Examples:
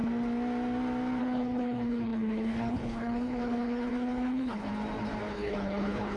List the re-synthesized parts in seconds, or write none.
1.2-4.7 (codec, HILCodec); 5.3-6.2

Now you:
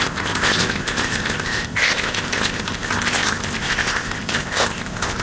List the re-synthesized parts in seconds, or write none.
0.0-5.2 (codec, ZipCodec)